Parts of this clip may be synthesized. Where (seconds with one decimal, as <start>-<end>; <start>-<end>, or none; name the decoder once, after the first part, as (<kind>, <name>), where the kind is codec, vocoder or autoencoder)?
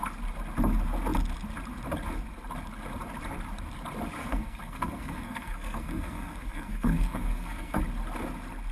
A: 4.2-7.8 (codec, SNAC)